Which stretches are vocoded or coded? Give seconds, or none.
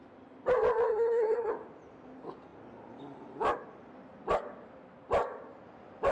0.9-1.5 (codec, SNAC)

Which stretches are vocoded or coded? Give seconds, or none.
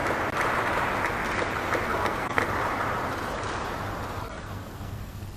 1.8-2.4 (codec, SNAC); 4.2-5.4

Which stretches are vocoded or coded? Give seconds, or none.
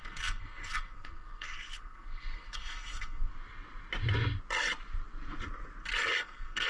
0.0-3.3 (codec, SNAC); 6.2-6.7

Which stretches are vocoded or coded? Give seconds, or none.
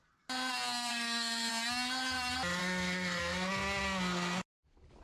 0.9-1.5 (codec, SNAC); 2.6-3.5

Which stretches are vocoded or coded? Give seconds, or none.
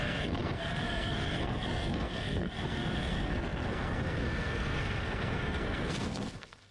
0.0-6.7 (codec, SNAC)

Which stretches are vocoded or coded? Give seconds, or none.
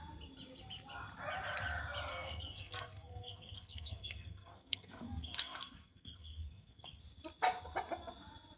2.1-7.0 (codec, SNAC)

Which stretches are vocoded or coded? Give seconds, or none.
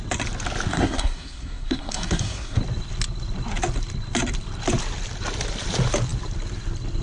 0.7-2.6 (codec, SNAC)